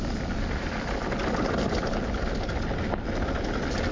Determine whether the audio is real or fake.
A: real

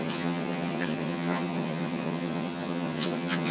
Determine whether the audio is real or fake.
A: fake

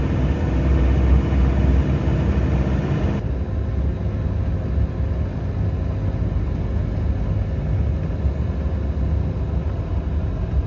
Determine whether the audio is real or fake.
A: real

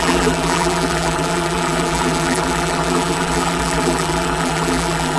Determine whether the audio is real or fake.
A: fake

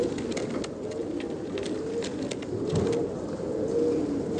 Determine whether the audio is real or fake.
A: real